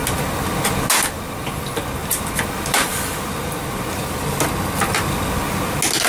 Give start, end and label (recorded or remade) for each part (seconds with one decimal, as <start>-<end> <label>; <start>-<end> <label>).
0.0-2.0 recorded; 2.0-4.3 remade; 4.3-6.1 recorded